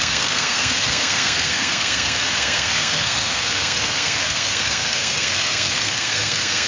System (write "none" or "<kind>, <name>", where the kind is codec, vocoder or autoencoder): codec, SNAC